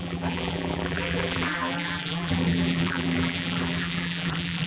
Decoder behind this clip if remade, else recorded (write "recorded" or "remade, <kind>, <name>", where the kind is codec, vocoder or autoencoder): remade, vocoder, BigVGAN v2